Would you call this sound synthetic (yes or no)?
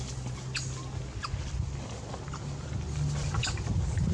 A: no